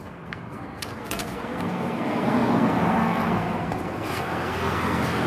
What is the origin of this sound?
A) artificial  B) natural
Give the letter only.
A